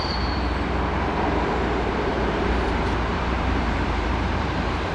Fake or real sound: fake